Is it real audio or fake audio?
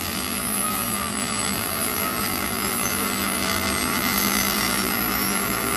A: fake